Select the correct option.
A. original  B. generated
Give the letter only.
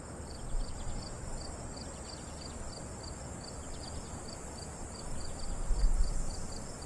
A